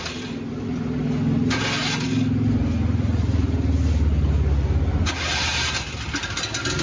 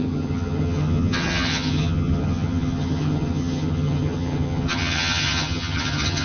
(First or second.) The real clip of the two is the first